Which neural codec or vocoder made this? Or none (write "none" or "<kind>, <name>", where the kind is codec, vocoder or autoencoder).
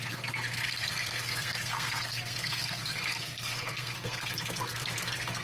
codec, SNAC